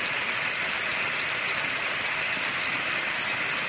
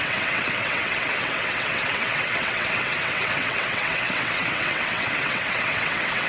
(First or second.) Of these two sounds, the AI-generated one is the second